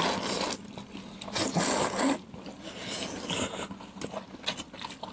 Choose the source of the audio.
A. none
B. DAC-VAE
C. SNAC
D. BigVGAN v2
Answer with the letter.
A